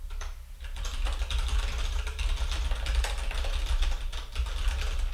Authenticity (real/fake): real